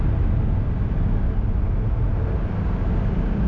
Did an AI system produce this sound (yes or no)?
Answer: no